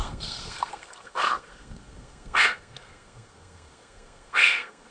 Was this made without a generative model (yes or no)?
no